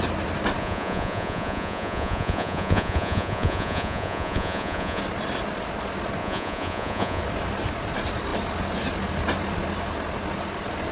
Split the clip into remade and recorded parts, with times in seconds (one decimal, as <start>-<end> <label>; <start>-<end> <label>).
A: 0.0-0.6 recorded; 0.6-5.0 remade; 5.0-6.2 recorded; 6.2-7.2 remade; 7.2-10.9 recorded